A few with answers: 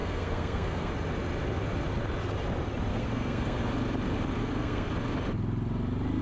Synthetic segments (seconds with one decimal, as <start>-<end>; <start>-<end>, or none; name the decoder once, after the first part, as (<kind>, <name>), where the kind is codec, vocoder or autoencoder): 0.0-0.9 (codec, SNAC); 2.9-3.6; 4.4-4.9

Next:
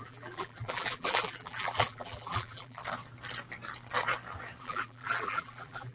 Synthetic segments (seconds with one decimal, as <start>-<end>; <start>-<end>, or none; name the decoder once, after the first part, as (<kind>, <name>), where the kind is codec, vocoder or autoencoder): 0.0-2.8 (vocoder, BigVGAN v2); 4.6-5.9

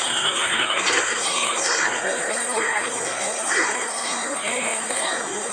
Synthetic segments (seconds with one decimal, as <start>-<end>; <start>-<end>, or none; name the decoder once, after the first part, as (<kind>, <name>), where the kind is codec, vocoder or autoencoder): 0.0-5.5 (codec, SNAC)